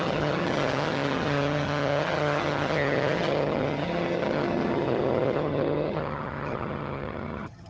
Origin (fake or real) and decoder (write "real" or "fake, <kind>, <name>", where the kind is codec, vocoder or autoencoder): fake, vocoder, HiFi-GAN